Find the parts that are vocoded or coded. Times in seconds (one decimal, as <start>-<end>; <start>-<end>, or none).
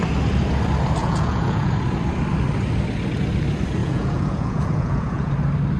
1.0-1.7; 3.8-5.3